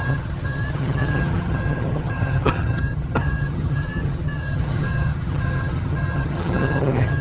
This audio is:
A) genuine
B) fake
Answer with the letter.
B